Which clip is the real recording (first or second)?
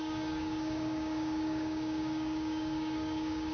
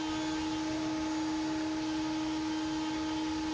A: second